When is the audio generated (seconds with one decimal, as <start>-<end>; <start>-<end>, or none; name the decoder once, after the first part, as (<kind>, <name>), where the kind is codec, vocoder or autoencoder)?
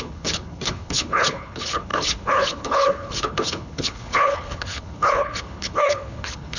0.0-6.6 (codec, HILCodec)